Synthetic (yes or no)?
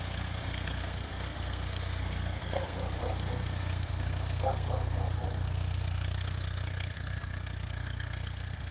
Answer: yes